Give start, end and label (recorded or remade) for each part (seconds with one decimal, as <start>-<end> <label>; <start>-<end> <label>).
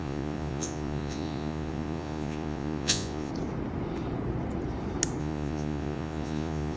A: 0.0-3.3 remade; 3.3-5.2 recorded; 5.2-6.8 remade